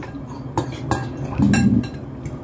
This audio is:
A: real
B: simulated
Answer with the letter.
A